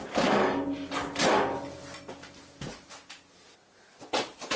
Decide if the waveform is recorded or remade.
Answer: recorded